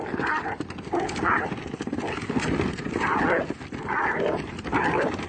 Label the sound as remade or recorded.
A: recorded